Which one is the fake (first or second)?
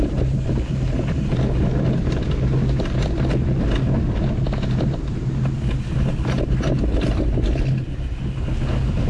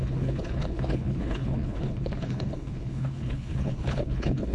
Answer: second